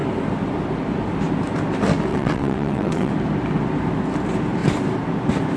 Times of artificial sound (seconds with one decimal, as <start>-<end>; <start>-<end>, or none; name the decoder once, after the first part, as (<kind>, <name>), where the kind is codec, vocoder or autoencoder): 2.1-3.1 (vocoder, WaveNeXt)